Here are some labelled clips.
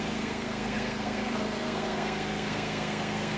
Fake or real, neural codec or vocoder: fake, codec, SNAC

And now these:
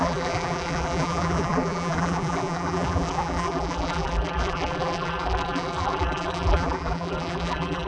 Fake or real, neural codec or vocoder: fake, vocoder, BigVGAN v2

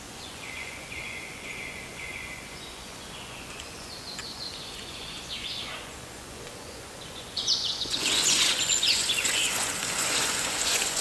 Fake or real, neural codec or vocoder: fake, vocoder, Vocos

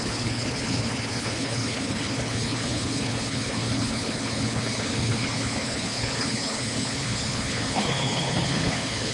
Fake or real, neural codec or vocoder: fake, codec, HILCodec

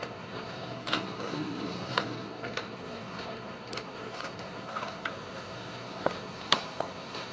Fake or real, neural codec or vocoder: fake, codec, SNAC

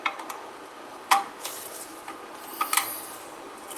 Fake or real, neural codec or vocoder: fake, vocoder, BigVGAN v2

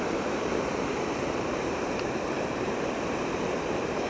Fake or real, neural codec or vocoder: fake, vocoder, BigVGAN v2